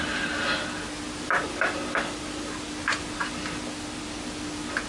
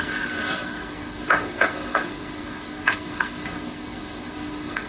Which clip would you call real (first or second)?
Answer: first